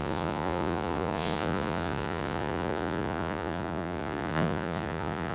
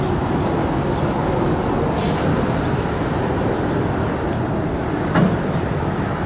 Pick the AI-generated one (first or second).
first